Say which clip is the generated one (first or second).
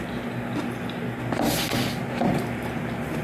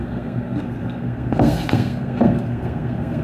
second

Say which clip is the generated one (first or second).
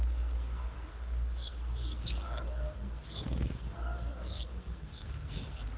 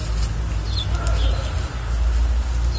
first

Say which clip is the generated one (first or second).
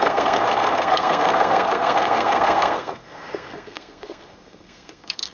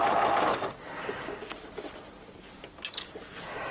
first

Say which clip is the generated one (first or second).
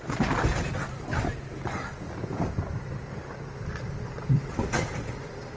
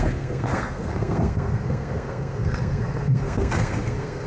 second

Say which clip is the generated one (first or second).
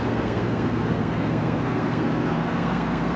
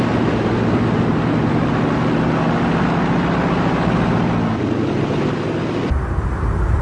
first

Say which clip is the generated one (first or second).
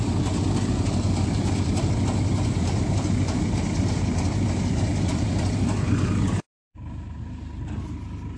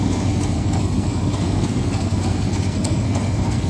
second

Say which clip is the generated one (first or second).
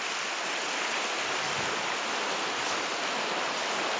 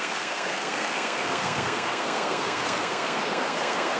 second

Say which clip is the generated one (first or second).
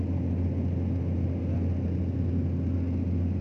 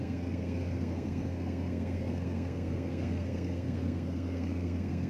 second